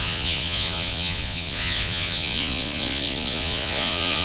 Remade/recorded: remade